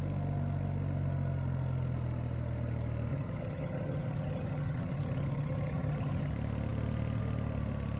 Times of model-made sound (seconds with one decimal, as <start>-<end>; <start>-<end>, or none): 3.1-6.3